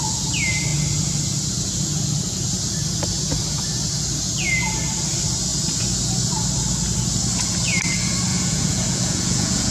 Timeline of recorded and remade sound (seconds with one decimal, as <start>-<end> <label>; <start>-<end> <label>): 0.0-8.3 recorded; 8.3-9.7 remade